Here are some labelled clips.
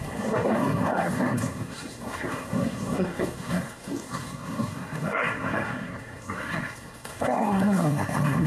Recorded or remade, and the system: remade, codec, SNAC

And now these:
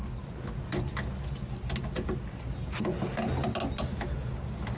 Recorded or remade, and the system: recorded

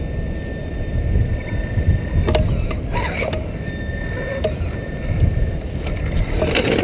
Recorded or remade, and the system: recorded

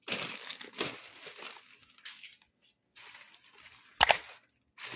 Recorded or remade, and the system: recorded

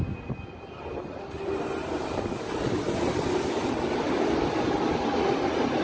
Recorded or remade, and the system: recorded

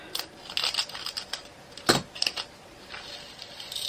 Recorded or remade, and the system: recorded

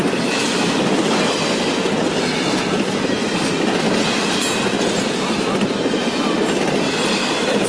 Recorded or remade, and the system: recorded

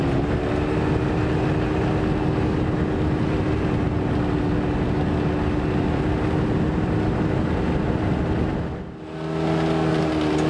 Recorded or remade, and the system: recorded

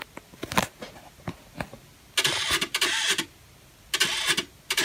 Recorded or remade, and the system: recorded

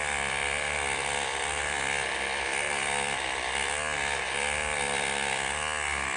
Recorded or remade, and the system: recorded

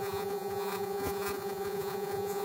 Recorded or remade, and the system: remade, vocoder, Vocos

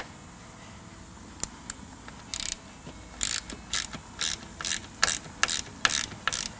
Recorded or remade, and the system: recorded